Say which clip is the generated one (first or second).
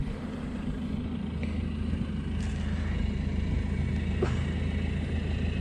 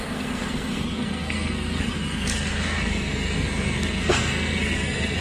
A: second